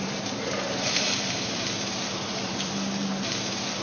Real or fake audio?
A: fake